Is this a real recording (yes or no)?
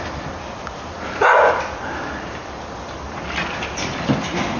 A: yes